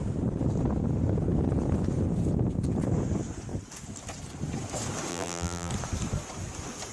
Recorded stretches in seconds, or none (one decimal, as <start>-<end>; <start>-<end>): 0.0-5.1; 5.7-6.9